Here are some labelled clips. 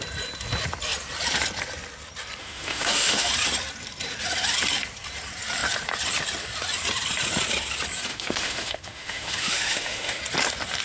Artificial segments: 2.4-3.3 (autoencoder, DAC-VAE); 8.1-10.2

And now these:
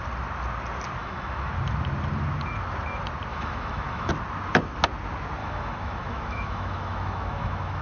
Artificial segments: 1.0-1.5 (autoencoder, DAC-VAE); 3.3-4.1; 5.4-7.8

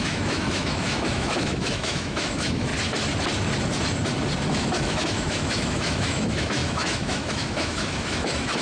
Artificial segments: 0.0-2.7 (autoencoder, DAC-VAE); 4.5-8.6

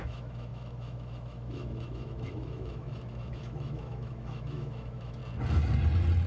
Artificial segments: 0.0-5.2 (autoencoder, DAC-VAE)